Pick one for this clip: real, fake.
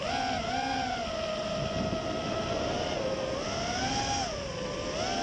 real